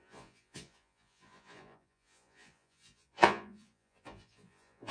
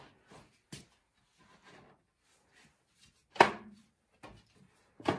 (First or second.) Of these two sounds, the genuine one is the second